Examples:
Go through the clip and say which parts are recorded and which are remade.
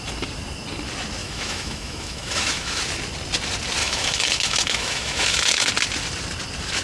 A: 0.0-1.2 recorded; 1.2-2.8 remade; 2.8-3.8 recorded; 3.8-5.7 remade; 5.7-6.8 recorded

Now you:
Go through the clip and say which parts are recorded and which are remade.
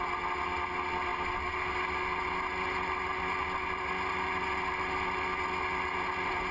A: 0.0-6.5 recorded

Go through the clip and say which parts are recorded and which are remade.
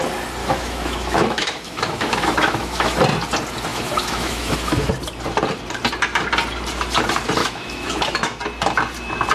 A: 0.0-0.4 recorded; 0.4-3.0 remade; 3.0-3.7 recorded; 3.7-4.9 remade; 4.9-7.4 recorded; 7.4-8.4 remade; 8.4-9.3 recorded